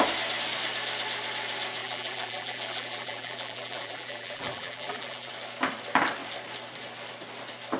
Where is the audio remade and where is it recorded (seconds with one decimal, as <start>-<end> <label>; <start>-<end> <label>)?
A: 0.0-1.8 recorded; 1.8-5.3 remade; 5.3-7.8 recorded